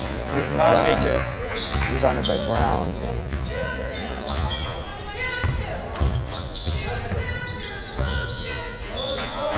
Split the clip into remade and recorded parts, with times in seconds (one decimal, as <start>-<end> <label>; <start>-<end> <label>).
0.0-4.9 remade; 4.9-6.0 recorded; 6.0-6.8 remade; 6.8-7.7 recorded; 7.7-9.6 remade